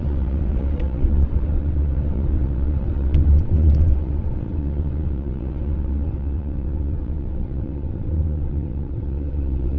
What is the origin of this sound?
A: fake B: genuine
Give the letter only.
A